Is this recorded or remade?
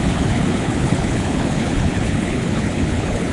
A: remade